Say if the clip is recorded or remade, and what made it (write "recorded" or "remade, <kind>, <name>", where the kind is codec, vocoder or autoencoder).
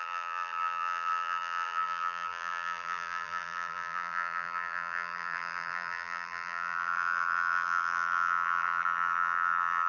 remade, vocoder, BigVGAN v2